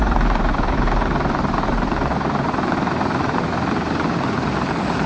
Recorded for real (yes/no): yes